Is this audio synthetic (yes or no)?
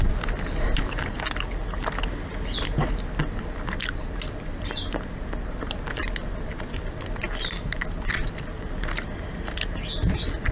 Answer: no